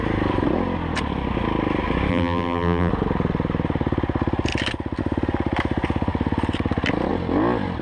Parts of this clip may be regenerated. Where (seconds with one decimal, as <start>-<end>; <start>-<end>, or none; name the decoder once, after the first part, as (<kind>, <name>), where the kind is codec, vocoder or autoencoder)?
2.1-2.9 (vocoder, BigVGAN v2)